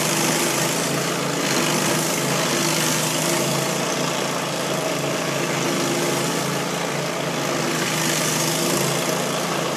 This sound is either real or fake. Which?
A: real